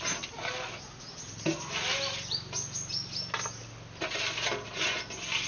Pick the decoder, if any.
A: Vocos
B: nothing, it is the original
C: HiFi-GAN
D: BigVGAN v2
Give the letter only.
B